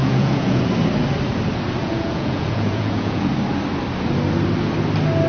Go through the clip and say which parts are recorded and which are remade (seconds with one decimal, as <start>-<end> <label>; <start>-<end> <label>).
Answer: 0.0-0.6 remade; 0.6-1.8 recorded; 1.8-3.3 remade; 3.3-5.3 recorded